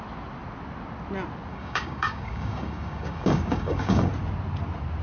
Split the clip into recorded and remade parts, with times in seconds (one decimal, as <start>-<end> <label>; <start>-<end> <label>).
0.0-1.5 recorded; 1.5-4.1 remade; 4.1-5.0 recorded

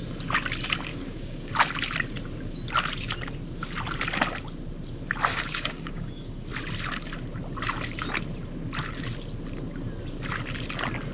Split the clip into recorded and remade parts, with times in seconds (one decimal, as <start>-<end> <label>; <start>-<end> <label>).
0.0-0.9 recorded; 0.9-1.5 remade; 1.5-5.3 recorded; 5.3-6.5 remade; 6.5-11.1 recorded

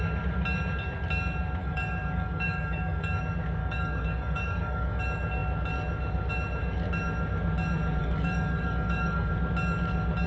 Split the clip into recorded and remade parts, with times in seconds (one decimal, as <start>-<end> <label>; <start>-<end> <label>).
0.0-1.6 recorded; 1.6-3.2 remade; 3.2-3.6 recorded; 3.6-5.0 remade; 5.0-8.0 recorded; 8.0-9.3 remade; 9.3-10.3 recorded

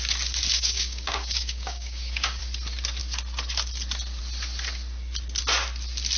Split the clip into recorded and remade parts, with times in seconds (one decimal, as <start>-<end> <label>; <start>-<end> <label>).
0.0-0.5 recorded; 0.5-2.4 remade; 2.4-6.2 recorded

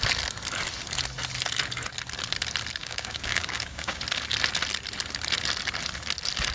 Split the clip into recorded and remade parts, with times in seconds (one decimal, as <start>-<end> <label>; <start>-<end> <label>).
0.0-2.8 recorded; 2.8-4.0 remade; 4.0-6.5 recorded

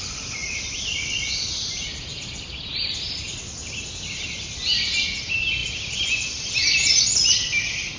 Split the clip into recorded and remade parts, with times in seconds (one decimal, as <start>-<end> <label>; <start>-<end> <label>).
0.0-8.0 recorded

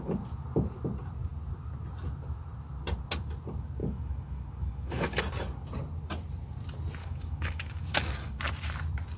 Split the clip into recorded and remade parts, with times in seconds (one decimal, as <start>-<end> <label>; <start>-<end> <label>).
0.0-3.8 recorded; 3.8-5.2 remade; 5.2-7.0 recorded; 7.0-8.4 remade; 8.4-9.2 recorded